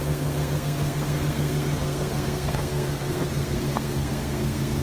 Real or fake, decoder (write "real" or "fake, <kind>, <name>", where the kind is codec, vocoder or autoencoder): fake, codec, SNAC